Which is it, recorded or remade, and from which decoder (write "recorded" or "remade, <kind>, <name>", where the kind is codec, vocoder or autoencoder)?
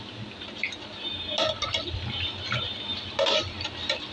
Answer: recorded